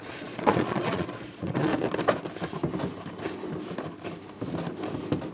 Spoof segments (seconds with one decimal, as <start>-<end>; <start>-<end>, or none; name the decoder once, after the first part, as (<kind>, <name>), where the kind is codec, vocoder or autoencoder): 0.0-1.7 (vocoder, Vocos)